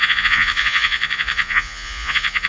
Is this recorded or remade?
remade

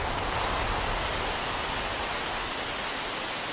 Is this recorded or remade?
recorded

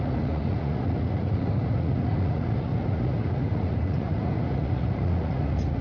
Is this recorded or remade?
remade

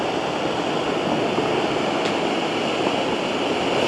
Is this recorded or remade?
recorded